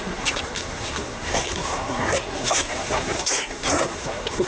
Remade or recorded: remade